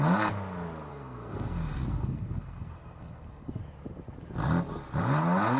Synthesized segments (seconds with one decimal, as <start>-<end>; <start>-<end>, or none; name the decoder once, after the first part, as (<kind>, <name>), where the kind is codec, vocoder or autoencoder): 0.9-3.6 (codec, SNAC)